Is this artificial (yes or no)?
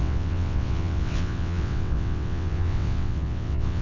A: yes